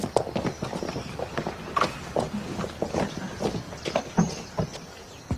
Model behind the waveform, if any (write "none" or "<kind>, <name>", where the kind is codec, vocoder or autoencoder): none